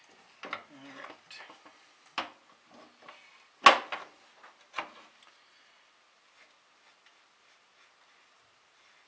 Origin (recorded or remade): recorded